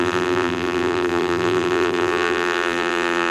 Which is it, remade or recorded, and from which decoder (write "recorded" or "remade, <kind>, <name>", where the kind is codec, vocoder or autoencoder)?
remade, vocoder, BigVGAN v2